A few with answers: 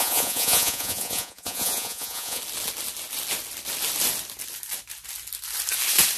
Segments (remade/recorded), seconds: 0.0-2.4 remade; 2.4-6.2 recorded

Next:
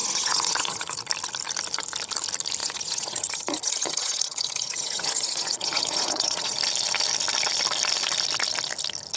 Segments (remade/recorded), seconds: 0.0-1.0 remade; 1.0-2.6 recorded; 2.6-6.6 remade; 6.6-9.2 recorded

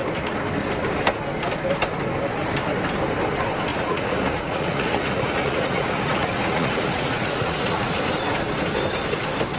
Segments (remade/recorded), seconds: 0.0-3.7 recorded; 3.7-8.0 remade; 8.0-9.6 recorded

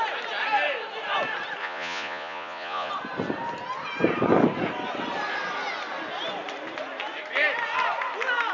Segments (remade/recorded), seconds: 0.0-1.6 recorded; 1.6-2.9 remade; 2.9-8.5 recorded

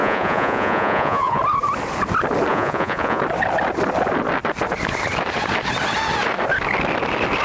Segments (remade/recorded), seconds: 0.0-1.4 remade; 1.4-2.5 recorded; 2.5-3.2 remade; 3.2-7.4 recorded

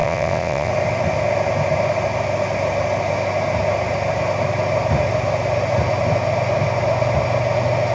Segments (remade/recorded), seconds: 0.0-0.7 remade; 0.7-7.9 recorded